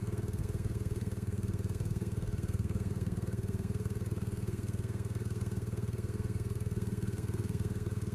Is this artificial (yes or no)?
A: yes